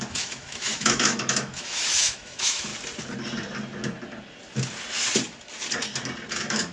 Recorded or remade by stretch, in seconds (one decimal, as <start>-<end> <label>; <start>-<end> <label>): 0.0-2.7 remade; 2.7-6.3 recorded; 6.3-6.7 remade